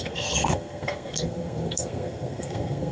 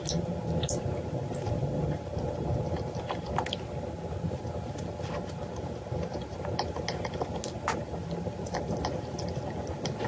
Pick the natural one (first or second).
second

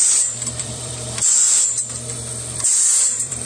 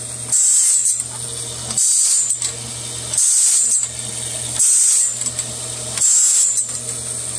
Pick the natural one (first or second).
second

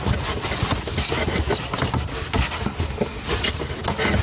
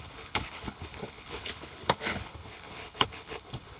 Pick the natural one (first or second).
first